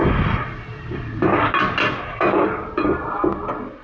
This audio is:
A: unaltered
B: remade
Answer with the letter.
A